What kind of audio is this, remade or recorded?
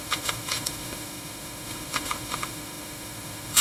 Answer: remade